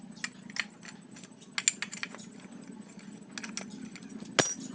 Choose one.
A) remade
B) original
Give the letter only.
B